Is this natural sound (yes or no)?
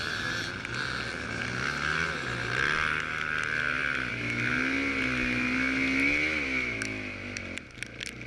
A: yes